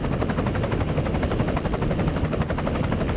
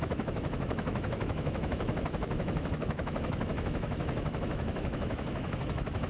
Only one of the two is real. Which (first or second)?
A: first